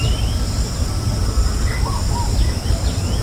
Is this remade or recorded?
recorded